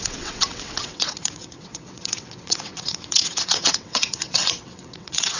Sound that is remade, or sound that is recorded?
remade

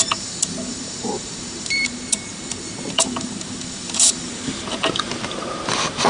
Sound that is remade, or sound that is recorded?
remade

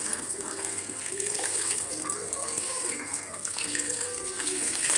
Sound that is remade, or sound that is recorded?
remade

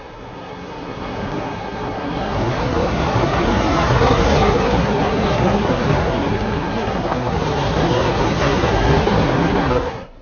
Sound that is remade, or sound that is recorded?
remade